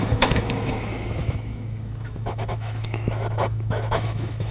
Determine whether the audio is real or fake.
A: fake